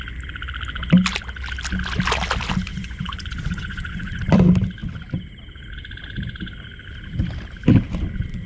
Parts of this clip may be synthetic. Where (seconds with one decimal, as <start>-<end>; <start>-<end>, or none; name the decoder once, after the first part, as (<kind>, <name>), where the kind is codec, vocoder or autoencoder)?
2.7-4.2 (vocoder, Vocos)